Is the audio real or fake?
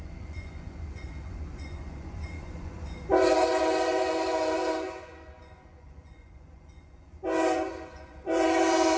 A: fake